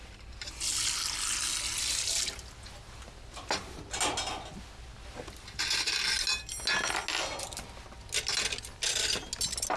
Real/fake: real